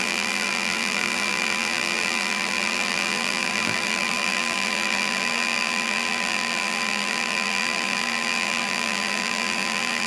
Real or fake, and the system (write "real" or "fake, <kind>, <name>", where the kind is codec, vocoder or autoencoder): fake, vocoder, BigVGAN v2